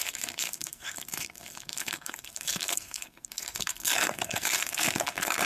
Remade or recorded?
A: remade